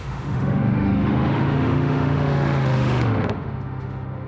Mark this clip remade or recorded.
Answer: remade